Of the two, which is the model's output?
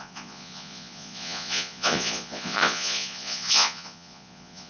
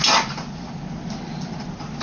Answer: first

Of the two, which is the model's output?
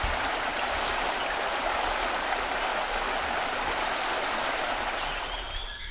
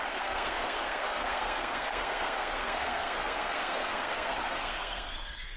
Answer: second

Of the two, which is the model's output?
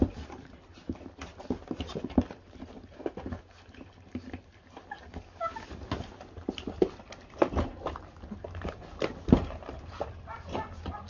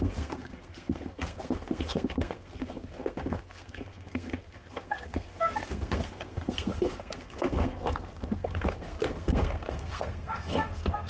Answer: second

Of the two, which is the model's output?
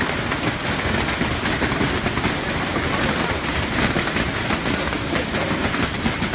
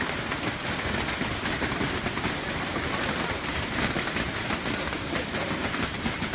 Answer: second